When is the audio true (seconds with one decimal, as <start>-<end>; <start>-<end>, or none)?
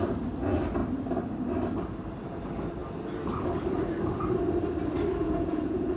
0.0-5.2